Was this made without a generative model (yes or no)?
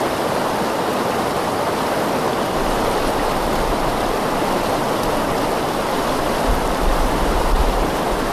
yes